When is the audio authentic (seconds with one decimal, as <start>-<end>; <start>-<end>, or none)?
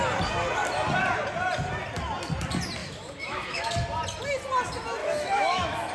0.0-2.8; 3.7-5.0